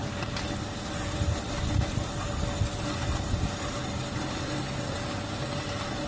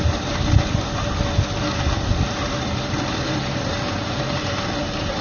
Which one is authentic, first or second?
first